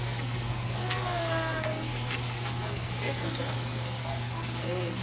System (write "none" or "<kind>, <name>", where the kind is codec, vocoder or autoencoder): codec, SNAC